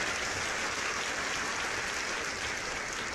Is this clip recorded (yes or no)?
yes